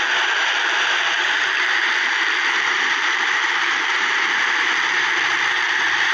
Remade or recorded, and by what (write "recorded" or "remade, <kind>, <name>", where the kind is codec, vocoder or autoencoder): remade, vocoder, BigVGAN v2